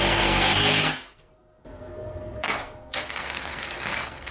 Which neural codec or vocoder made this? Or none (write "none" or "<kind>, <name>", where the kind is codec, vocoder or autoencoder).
codec, SNAC